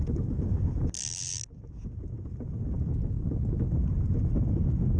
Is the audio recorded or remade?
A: recorded